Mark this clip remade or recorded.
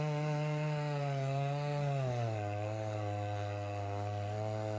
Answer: remade